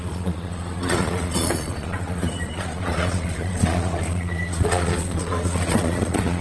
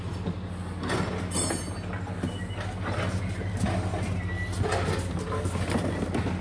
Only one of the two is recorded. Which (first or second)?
second